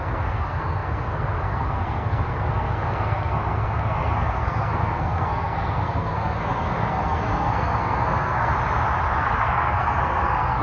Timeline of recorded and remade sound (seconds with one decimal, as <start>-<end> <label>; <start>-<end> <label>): 0.0-8.5 remade; 8.5-9.2 recorded; 9.2-10.6 remade